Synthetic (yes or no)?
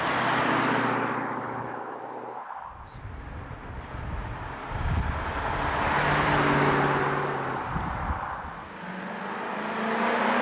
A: no